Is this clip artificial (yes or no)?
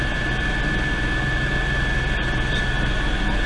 no